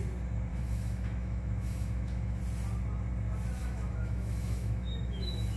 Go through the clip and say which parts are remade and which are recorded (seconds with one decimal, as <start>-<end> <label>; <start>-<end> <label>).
0.0-0.5 recorded; 0.5-2.4 remade; 2.4-3.6 recorded; 3.6-5.6 remade